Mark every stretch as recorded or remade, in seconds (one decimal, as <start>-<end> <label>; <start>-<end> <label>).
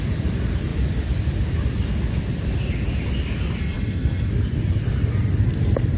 0.0-3.6 recorded; 3.6-4.3 remade; 4.3-6.0 recorded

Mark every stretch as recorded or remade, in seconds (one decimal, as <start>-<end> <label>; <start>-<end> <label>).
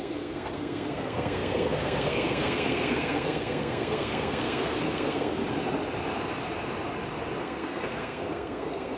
0.0-5.4 remade; 5.4-7.4 recorded; 7.4-9.0 remade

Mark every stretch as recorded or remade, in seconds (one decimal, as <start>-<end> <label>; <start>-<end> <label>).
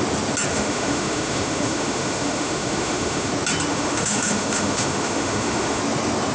0.0-0.5 recorded; 0.5-3.3 remade; 3.3-3.7 recorded; 3.7-5.8 remade; 5.8-6.3 recorded